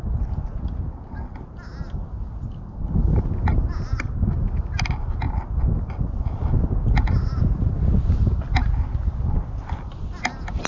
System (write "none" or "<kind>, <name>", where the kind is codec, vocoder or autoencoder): none